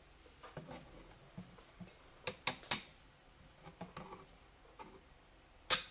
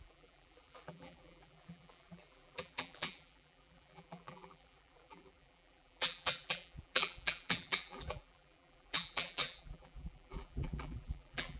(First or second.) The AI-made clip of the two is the second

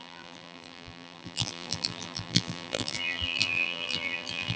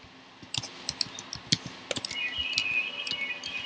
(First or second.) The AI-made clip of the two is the first